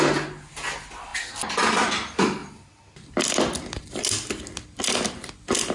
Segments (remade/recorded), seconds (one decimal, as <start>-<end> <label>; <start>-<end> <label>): 0.0-5.7 recorded